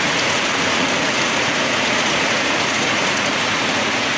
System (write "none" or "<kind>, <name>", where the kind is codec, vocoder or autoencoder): vocoder, Vocos